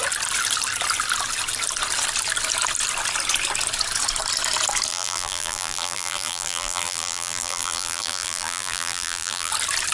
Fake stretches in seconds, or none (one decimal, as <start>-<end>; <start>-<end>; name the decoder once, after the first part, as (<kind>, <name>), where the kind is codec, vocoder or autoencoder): 4.9-9.5 (vocoder, BigVGAN v2)